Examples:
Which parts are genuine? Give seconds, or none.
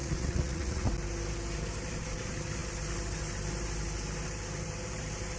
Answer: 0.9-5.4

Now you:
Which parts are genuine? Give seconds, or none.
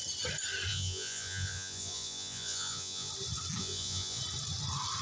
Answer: 0.0-0.7; 3.1-3.6; 4.2-5.0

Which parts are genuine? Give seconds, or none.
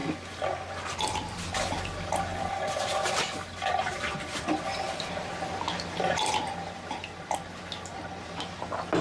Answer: 0.0-9.0